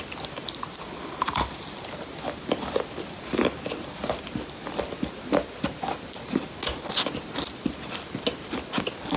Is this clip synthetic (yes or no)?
no